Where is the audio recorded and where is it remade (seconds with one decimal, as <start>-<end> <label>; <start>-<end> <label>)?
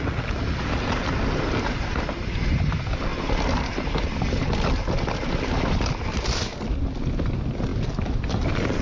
0.0-8.8 recorded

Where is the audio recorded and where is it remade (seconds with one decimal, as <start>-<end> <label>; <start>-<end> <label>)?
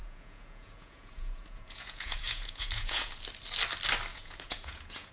0.0-3.1 remade; 3.1-4.1 recorded; 4.1-5.1 remade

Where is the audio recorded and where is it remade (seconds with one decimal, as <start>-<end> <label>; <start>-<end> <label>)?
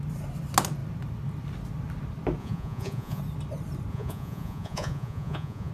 0.0-2.4 recorded; 2.4-3.2 remade; 3.2-3.9 recorded; 3.9-5.7 remade